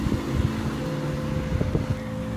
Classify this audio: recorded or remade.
recorded